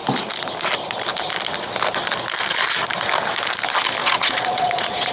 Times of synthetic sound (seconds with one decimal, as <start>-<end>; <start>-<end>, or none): 4.0-5.1